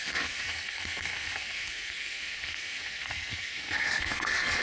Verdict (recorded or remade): remade